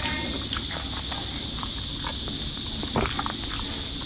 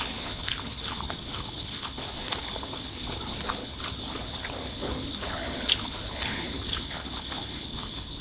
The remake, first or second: second